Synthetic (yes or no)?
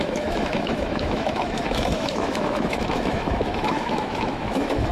yes